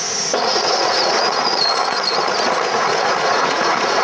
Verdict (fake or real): fake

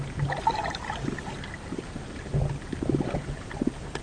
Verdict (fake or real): real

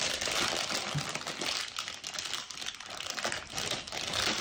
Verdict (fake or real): real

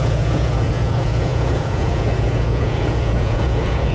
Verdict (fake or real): fake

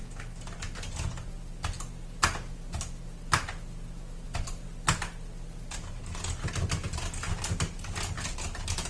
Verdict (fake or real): real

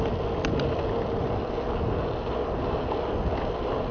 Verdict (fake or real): real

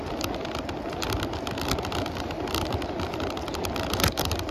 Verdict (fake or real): real